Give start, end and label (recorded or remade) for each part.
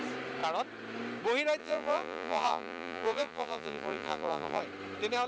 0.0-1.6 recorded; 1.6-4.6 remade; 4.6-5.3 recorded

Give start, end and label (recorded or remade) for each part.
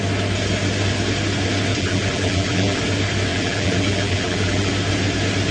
0.0-1.7 recorded; 1.7-2.8 remade; 2.8-3.3 recorded; 3.3-4.7 remade; 4.7-5.5 recorded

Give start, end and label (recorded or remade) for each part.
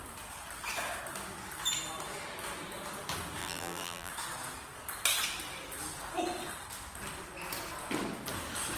0.0-3.4 recorded; 3.4-4.1 remade; 4.1-8.8 recorded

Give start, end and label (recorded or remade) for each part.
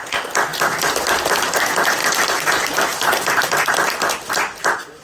0.0-2.0 recorded; 2.0-4.1 remade; 4.1-5.0 recorded